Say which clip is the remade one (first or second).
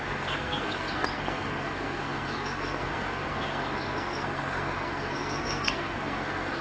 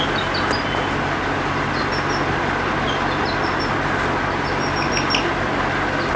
first